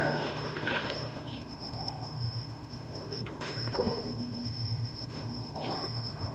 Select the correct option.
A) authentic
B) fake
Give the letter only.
B